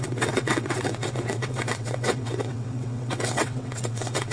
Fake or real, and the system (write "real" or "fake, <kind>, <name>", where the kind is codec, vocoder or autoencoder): fake, vocoder, WaveNeXt